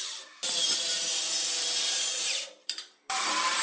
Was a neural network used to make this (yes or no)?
yes